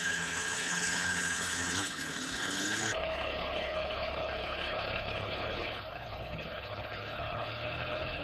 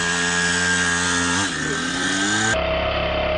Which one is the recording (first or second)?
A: second